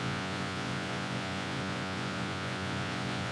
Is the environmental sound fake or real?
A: fake